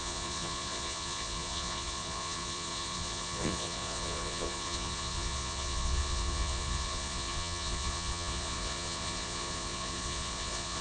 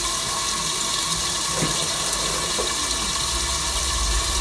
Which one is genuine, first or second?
second